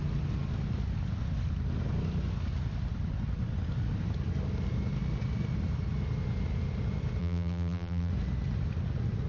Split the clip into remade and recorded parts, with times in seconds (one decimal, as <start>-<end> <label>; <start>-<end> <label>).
0.0-7.2 recorded; 7.2-8.1 remade; 8.1-9.3 recorded